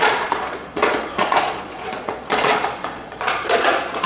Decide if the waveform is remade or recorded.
remade